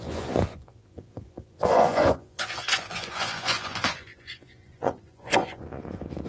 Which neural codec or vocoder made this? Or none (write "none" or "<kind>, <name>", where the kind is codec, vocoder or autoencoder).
vocoder, Vocos